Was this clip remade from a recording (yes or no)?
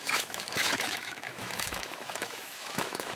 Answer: yes